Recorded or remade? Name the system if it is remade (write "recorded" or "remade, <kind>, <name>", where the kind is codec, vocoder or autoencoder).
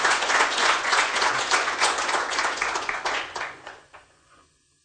remade, vocoder, Vocos